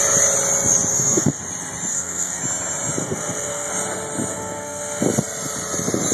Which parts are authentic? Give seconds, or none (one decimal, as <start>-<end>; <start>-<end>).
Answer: 0.0-0.9; 1.4-1.9; 2.4-3.0; 3.7-4.3; 5.0-6.1